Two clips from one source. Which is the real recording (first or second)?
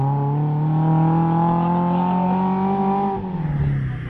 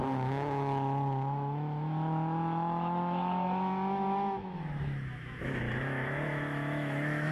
first